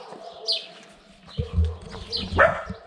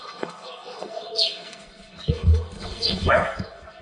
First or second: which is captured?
first